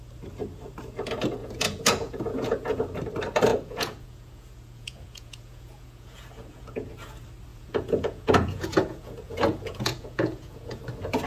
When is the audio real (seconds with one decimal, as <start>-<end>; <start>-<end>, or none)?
0.0-1.4; 2.8-3.5; 6.9-7.5; 10.8-11.3